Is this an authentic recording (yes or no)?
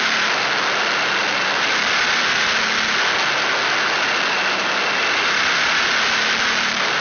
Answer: yes